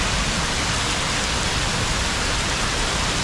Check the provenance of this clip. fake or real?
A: real